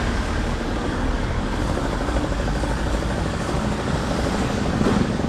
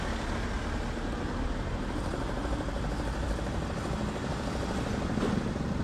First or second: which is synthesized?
first